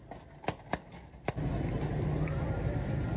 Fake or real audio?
real